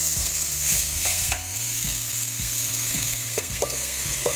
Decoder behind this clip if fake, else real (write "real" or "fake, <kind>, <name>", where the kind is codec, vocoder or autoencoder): fake, codec, SNAC